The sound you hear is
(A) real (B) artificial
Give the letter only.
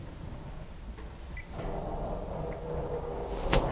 A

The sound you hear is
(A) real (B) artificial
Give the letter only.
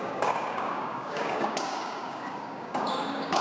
B